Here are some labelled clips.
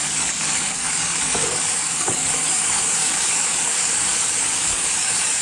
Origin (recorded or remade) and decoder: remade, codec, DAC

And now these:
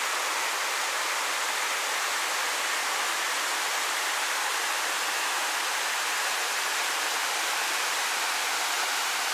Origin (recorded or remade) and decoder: recorded